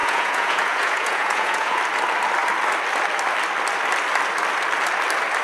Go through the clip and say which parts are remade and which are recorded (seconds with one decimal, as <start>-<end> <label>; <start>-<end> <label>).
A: 0.0-1.8 remade; 1.8-5.4 recorded